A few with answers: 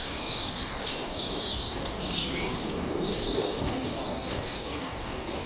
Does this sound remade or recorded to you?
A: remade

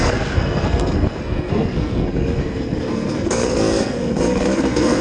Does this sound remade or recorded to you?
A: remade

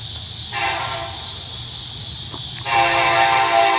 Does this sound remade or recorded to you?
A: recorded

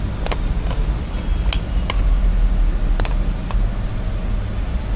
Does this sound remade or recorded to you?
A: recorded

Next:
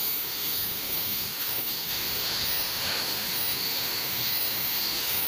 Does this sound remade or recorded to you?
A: remade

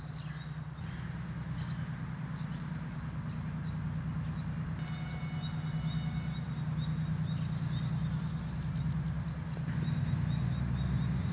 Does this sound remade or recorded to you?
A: recorded